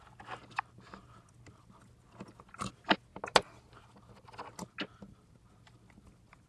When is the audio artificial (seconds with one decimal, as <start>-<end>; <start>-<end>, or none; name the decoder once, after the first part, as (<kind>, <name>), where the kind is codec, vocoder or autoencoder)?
none